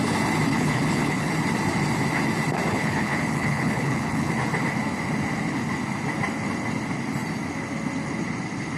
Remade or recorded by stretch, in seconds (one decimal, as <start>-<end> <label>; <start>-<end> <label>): 0.0-0.5 recorded; 0.5-1.3 remade; 1.3-2.7 recorded; 2.7-4.3 remade; 4.3-8.8 recorded